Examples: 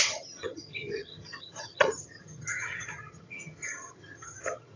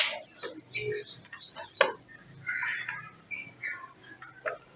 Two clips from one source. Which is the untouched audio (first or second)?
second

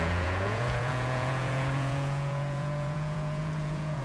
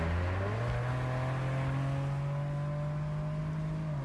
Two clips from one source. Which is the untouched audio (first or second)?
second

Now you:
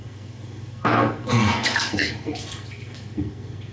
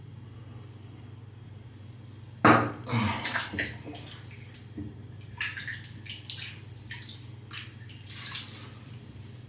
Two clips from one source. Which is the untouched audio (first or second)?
second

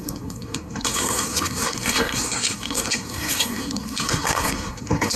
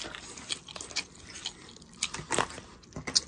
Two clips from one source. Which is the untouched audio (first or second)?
second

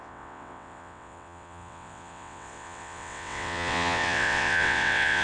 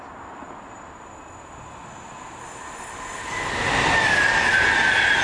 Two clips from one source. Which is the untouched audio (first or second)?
second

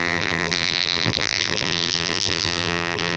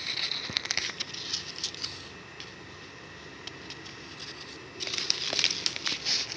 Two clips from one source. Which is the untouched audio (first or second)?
second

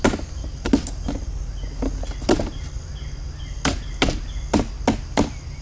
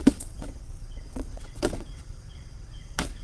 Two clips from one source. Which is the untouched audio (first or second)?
first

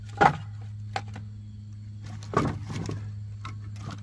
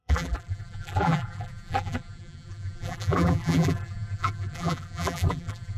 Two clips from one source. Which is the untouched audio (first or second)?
first